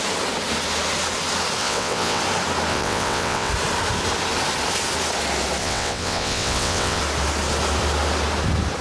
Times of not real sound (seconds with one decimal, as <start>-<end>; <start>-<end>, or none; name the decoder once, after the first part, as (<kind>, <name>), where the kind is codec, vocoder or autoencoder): 1.6-2.2 (vocoder, WaveNeXt); 2.7-3.5; 5.6-7.0